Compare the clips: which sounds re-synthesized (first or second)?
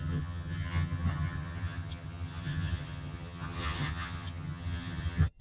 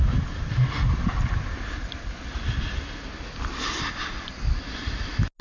first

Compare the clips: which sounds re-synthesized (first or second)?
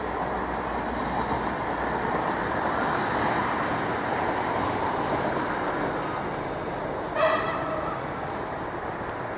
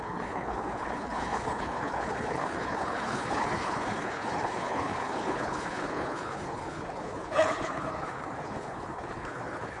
second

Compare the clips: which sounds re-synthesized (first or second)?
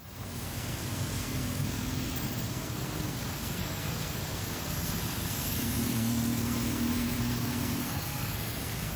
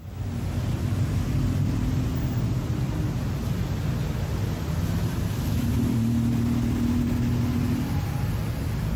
first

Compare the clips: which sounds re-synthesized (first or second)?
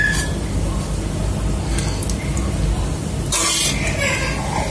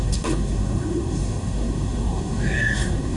second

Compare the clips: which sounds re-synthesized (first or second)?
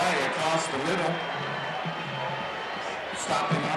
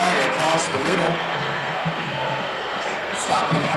second